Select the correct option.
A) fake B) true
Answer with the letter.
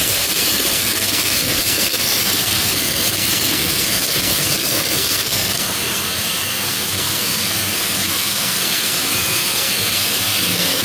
A